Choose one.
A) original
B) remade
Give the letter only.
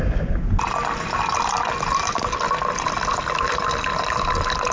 A